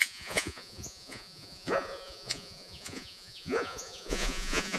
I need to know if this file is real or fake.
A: fake